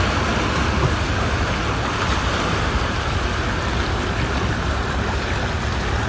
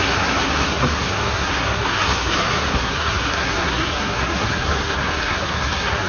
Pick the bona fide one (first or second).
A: first